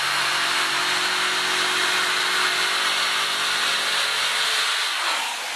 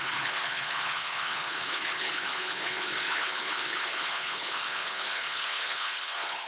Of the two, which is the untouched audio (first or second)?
first